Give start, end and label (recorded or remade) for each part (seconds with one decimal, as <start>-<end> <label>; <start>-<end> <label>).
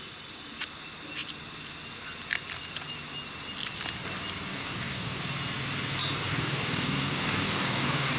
0.0-4.5 recorded; 4.5-5.2 remade; 5.2-6.3 recorded; 6.3-8.2 remade